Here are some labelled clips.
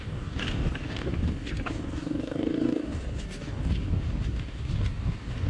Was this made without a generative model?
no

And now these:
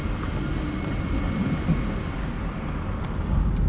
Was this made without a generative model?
yes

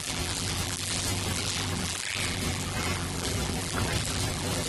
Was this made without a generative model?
no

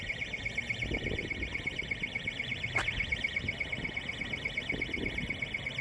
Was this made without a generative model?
yes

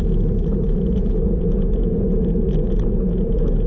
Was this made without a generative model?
yes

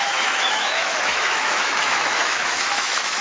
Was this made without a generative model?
no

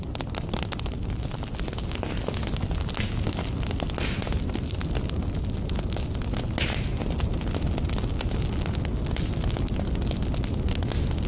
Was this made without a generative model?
yes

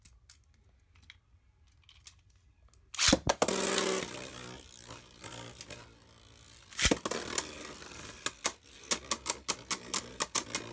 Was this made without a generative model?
yes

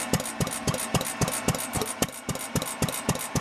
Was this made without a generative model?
yes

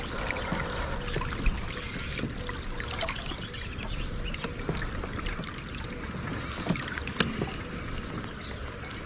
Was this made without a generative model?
yes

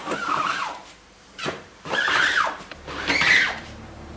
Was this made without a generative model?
no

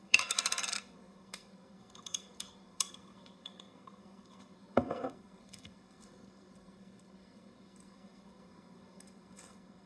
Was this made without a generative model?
no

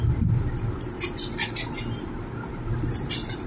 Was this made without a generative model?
yes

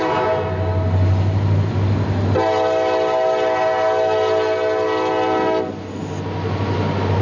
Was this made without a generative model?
yes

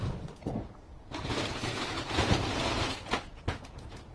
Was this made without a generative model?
no